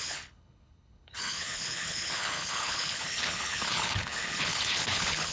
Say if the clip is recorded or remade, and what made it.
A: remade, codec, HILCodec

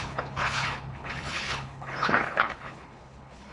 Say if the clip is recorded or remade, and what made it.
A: remade, codec, HILCodec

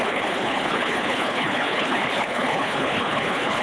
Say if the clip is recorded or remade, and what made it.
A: remade, codec, HILCodec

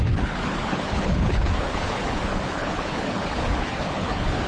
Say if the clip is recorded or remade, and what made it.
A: remade, codec, HILCodec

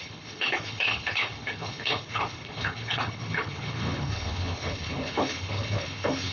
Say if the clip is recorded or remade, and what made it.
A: remade, codec, HILCodec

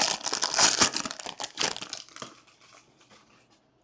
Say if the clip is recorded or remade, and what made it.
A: recorded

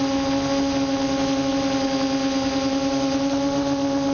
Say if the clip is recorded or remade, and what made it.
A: recorded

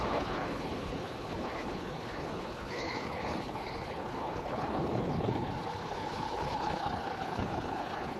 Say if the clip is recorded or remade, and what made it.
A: remade, codec, HILCodec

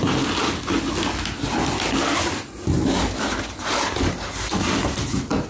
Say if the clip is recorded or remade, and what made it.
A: recorded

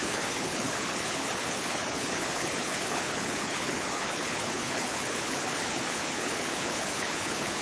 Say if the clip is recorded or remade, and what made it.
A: remade, codec, HILCodec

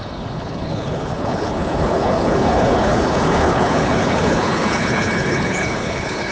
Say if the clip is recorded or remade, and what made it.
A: remade, codec, HILCodec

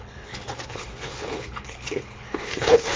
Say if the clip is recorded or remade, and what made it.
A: remade, codec, HILCodec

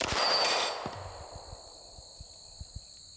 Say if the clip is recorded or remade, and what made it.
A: recorded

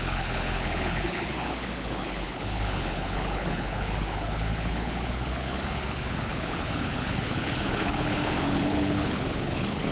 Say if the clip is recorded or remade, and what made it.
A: remade, codec, HILCodec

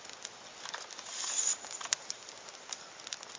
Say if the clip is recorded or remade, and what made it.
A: recorded